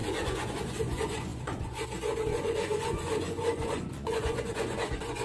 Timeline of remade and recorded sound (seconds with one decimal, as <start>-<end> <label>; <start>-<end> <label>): 0.0-5.2 remade